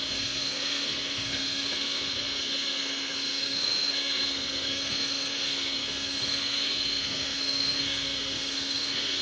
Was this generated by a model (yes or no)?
yes